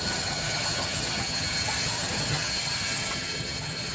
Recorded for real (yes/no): no